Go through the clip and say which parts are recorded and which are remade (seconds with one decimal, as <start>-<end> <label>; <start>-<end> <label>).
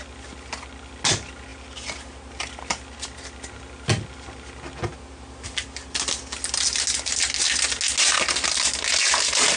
0.0-9.6 recorded